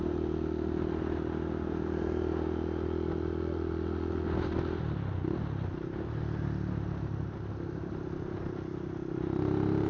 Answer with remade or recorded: recorded